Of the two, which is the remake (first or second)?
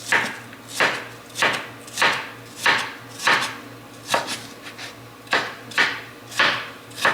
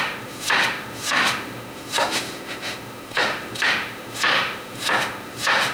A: second